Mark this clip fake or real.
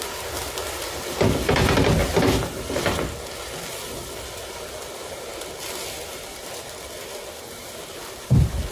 real